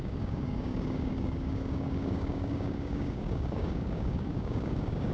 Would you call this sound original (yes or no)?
no